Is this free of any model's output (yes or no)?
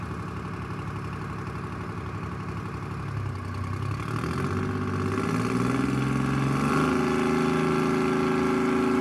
yes